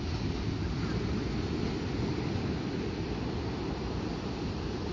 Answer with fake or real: real